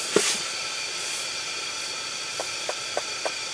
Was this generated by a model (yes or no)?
no